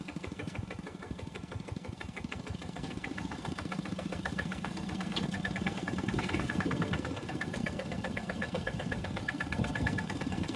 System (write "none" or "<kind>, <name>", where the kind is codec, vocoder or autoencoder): codec, SNAC